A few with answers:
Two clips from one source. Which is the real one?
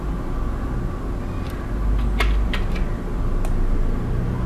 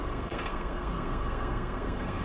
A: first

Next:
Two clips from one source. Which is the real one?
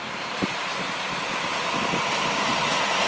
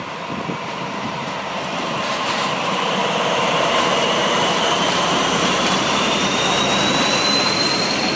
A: first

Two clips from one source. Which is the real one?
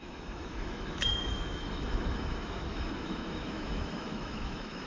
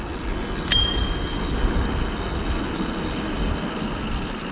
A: second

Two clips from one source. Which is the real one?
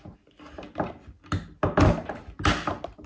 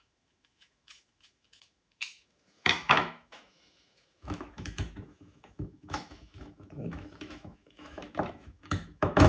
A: first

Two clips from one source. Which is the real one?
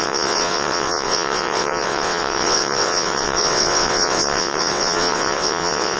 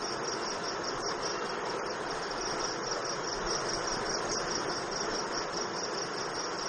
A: second